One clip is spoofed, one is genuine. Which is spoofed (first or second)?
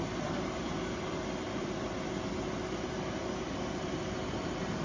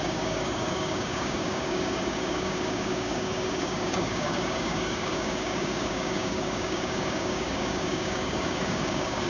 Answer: second